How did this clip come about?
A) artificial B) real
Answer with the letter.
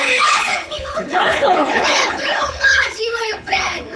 A